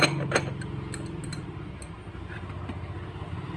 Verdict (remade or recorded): recorded